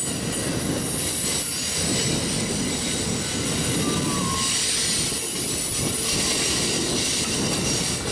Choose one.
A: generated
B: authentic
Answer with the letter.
B